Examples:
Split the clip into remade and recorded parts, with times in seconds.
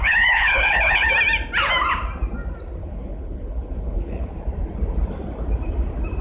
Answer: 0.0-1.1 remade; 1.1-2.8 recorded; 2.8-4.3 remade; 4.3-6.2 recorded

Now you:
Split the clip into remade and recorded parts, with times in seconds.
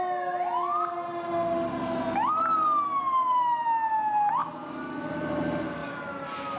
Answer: 0.0-6.6 recorded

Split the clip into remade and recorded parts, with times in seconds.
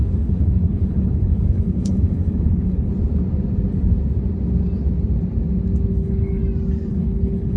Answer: 0.0-2.9 remade; 2.9-5.9 recorded; 5.9-6.4 remade; 6.4-6.9 recorded; 6.9-7.6 remade